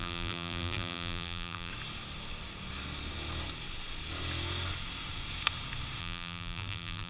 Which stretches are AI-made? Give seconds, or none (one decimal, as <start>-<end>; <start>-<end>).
0.0-1.7; 6.0-7.1